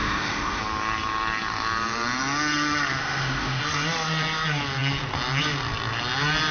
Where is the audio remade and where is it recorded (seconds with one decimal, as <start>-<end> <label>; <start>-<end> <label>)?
0.0-0.6 remade; 0.6-3.0 recorded; 3.0-3.6 remade; 3.6-6.5 recorded